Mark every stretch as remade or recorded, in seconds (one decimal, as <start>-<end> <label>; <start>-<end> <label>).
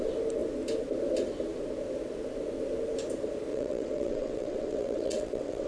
0.0-3.5 recorded; 3.5-5.7 remade